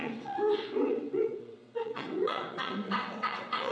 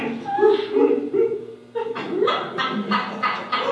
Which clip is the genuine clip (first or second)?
second